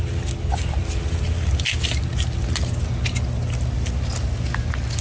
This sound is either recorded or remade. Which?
recorded